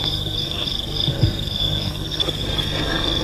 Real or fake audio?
fake